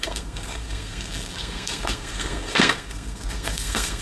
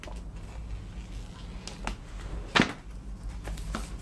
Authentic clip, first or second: second